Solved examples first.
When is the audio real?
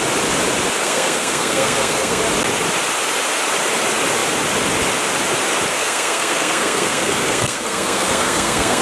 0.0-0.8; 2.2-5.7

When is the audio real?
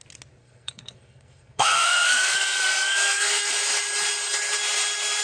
0.0-0.4; 3.5-5.2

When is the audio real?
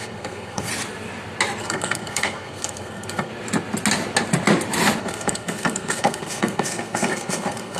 0.7-1.6; 3.3-5.0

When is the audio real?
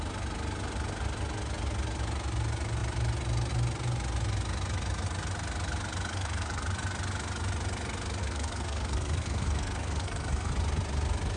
0.0-6.1; 6.6-8.2; 10.5-11.4